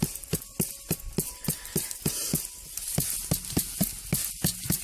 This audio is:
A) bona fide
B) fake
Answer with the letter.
A